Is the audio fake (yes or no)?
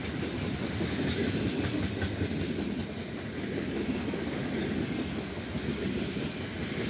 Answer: no